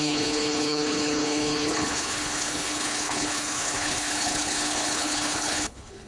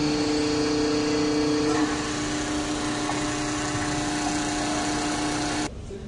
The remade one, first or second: first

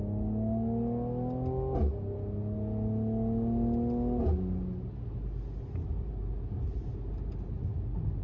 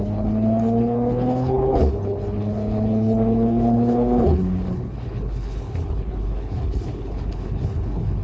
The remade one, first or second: second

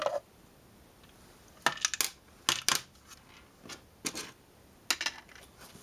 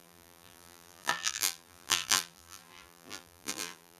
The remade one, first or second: second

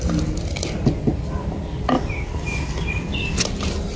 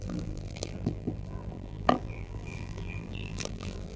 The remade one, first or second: second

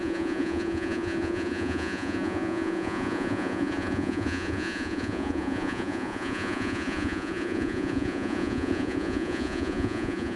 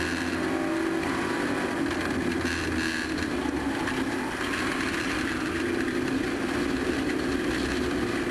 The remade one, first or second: first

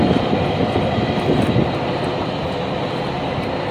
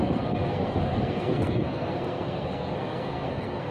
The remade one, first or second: second